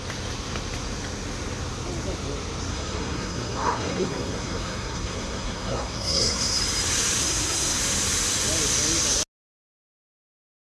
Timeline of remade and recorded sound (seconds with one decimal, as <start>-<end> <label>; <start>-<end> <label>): 0.0-2.7 recorded; 2.7-6.6 remade; 6.6-7.2 recorded; 7.2-7.8 remade; 7.8-10.8 recorded